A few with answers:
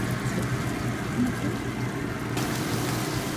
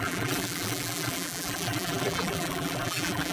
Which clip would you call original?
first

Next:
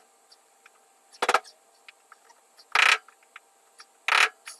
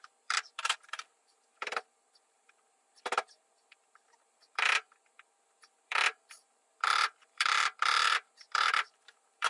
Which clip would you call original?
first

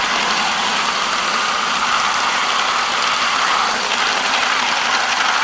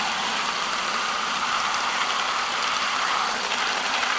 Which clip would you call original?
first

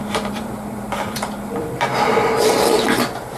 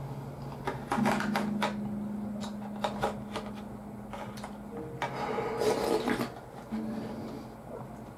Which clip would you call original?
second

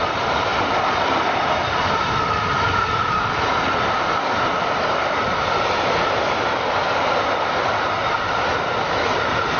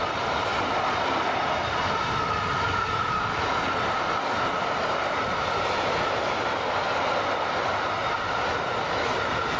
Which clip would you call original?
second